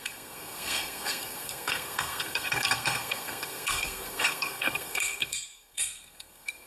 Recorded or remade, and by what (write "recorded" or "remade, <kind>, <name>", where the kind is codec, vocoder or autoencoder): remade, codec, SNAC